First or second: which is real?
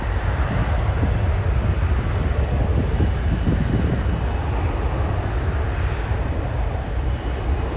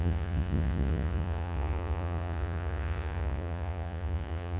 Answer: first